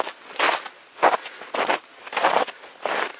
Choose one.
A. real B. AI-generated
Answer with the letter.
A